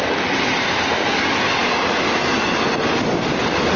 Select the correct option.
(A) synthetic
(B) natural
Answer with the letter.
B